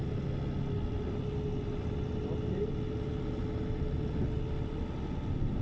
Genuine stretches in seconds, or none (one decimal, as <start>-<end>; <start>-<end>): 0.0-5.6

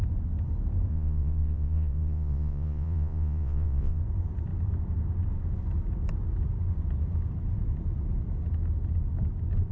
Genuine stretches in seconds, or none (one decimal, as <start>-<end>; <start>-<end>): 0.0-0.9; 4.0-9.7

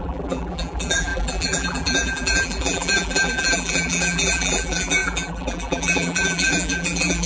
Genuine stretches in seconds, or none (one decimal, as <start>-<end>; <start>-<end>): none

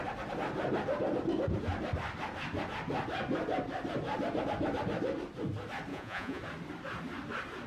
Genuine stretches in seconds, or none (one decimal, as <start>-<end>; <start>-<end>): 0.0-5.9; 6.4-7.7